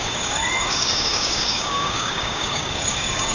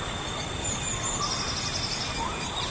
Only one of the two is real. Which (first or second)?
second